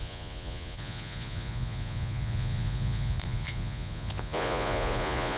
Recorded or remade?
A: remade